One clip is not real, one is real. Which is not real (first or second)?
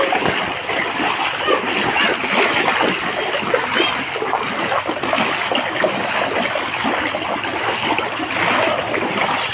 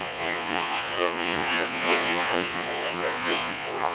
second